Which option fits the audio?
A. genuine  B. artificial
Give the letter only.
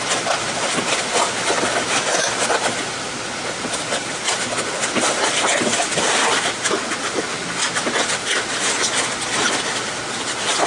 A